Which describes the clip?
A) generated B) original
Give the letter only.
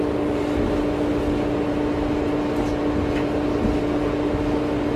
B